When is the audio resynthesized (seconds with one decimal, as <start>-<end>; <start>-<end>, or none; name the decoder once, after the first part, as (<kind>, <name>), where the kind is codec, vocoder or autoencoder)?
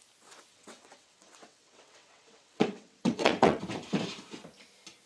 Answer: 0.5-3.6 (vocoder, WaveNeXt)